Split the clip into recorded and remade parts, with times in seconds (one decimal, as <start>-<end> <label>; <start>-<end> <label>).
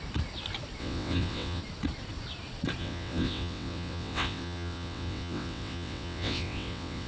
0.0-0.8 recorded; 0.8-1.6 remade; 1.6-2.8 recorded; 2.8-7.1 remade